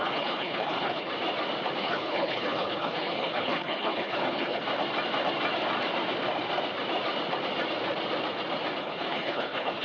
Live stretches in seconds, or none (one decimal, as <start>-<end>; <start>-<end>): 1.1-1.8; 4.6-8.8